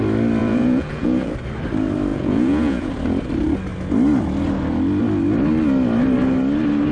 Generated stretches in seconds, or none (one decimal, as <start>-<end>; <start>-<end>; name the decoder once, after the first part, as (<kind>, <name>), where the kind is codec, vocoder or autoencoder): 0.4-1.3 (vocoder, Vocos); 2.1-2.9